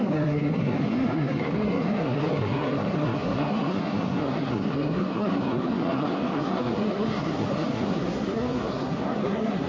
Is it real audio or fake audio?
fake